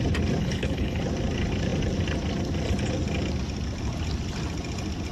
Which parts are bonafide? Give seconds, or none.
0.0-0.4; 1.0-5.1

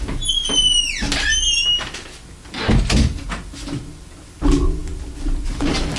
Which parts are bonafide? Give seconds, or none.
0.0-6.0

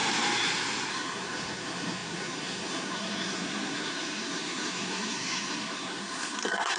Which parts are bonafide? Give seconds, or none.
0.0-0.9

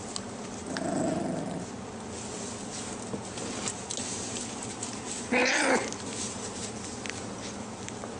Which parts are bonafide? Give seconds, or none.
0.0-8.2

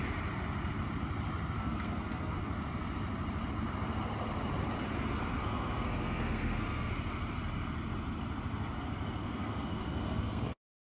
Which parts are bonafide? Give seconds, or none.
0.0-1.6; 2.4-5.4; 6.9-9.2